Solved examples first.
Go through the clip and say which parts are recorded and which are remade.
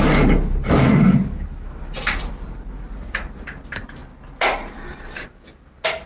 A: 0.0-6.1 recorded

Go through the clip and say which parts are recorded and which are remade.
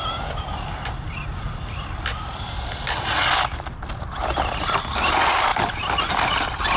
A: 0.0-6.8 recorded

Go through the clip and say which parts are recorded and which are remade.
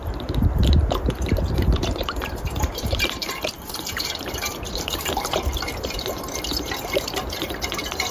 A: 0.0-8.1 remade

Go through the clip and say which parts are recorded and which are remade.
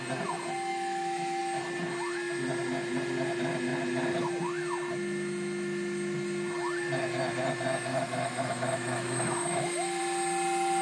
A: 0.0-0.7 recorded; 0.7-1.4 remade; 1.4-7.9 recorded; 7.9-10.0 remade; 10.0-10.8 recorded